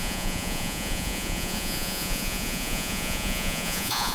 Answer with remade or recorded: remade